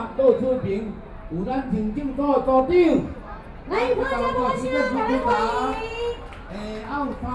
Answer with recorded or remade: recorded